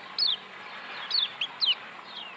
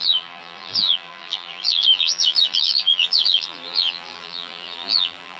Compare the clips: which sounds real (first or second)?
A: first